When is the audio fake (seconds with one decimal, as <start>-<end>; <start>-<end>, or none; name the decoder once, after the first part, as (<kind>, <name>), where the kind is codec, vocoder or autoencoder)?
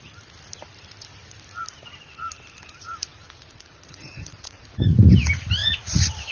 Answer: 3.1-5.1 (vocoder, Vocos); 5.6-6.3